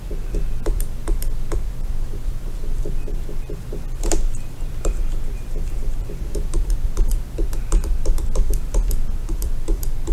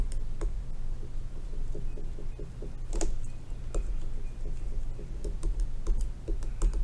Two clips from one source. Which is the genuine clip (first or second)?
second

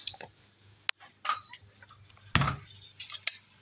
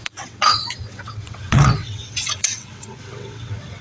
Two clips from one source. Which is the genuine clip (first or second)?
first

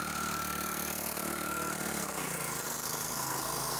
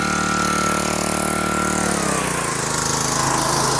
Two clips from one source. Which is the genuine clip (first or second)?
second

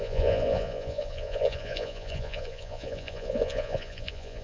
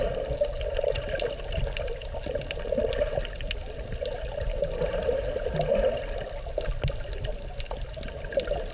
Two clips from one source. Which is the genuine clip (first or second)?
second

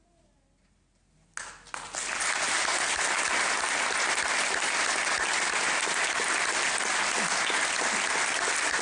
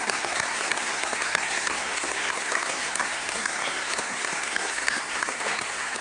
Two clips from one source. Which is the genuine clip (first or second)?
first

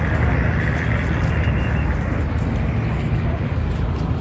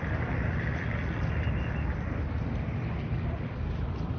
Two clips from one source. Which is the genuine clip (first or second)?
first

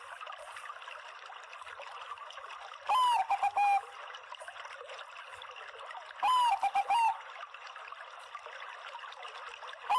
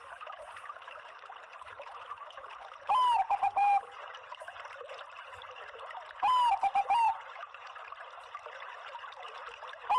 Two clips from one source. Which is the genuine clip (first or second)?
first